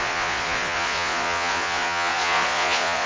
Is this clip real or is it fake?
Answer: fake